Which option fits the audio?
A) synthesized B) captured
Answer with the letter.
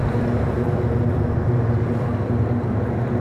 A